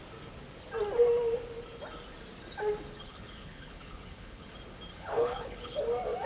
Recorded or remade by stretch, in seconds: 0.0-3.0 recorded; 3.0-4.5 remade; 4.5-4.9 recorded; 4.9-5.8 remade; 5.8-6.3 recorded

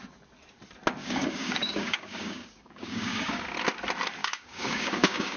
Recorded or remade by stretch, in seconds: 0.0-1.0 recorded; 1.0-3.4 remade; 3.4-4.2 recorded; 4.2-5.4 remade